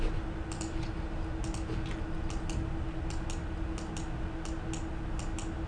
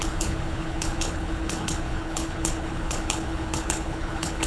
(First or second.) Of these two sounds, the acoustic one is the first